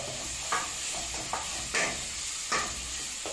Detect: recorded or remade recorded